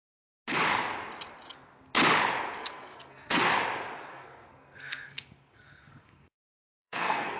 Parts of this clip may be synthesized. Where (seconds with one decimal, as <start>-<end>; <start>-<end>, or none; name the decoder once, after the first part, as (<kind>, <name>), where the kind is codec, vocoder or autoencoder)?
2.6-3.5 (codec, SNAC); 4.1-7.4